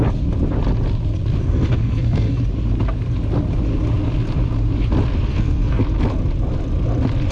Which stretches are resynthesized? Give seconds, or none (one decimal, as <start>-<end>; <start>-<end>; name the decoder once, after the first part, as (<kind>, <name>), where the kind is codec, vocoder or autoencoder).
1.4-2.4 (codec, SNAC); 5.3-5.8